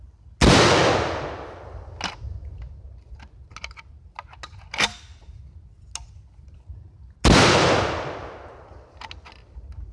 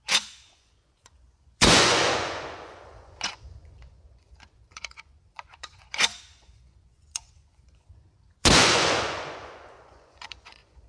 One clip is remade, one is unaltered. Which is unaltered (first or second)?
first